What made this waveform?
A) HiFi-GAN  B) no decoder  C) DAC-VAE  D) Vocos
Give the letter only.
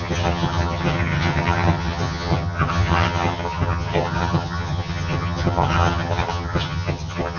A